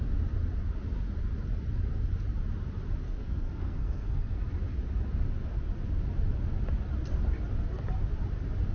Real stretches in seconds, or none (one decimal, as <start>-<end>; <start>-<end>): 0.0-3.0; 4.4-8.7